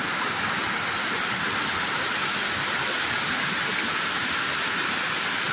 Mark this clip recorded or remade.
recorded